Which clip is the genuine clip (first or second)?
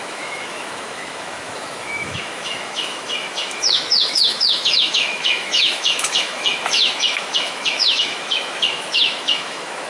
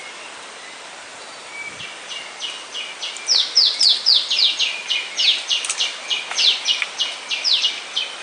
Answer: second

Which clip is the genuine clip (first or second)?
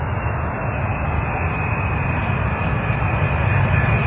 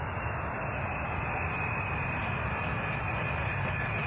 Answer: first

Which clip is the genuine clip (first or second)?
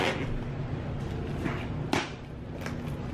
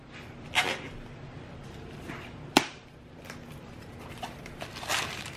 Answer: first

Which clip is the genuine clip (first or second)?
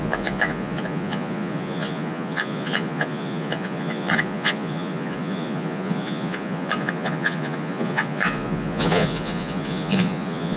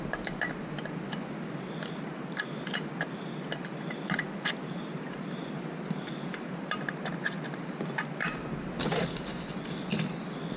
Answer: second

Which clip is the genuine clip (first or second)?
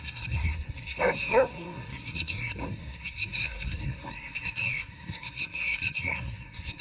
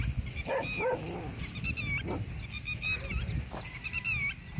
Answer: second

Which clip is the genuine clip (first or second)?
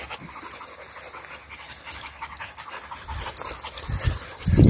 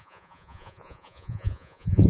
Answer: first